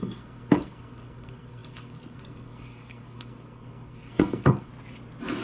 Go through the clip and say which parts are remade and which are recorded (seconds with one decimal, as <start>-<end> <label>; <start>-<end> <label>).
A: 0.0-4.7 remade; 4.7-5.4 recorded